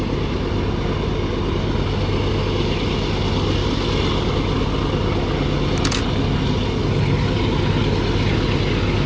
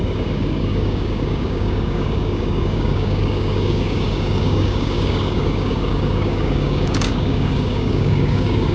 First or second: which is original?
first